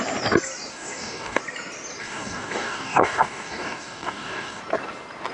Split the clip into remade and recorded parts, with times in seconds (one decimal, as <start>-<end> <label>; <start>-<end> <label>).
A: 0.0-0.7 recorded; 0.7-1.4 remade; 1.4-2.0 recorded; 2.0-4.6 remade; 4.6-5.3 recorded